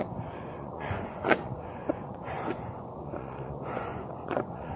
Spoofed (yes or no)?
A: yes